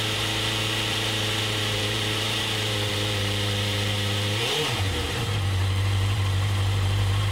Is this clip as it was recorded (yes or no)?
no